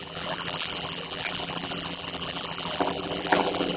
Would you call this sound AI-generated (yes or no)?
yes